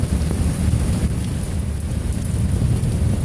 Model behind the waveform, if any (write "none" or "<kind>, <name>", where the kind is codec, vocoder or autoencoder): none